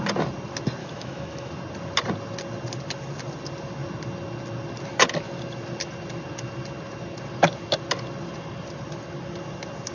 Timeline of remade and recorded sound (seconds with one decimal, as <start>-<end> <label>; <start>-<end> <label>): 0.0-0.8 recorded; 0.8-1.5 remade; 1.5-9.9 recorded